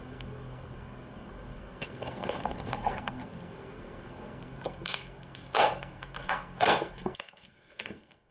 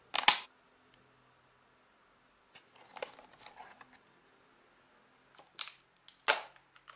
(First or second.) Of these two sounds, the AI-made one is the first